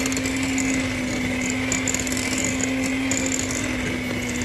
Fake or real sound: real